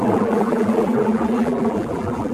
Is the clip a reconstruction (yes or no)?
yes